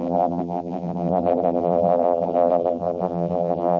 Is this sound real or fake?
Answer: fake